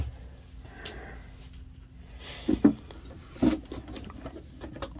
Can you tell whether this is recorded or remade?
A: recorded